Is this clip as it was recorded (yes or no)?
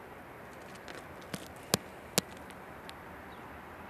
yes